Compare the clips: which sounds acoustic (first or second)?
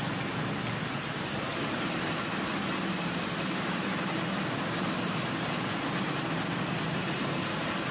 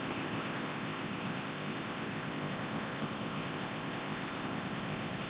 first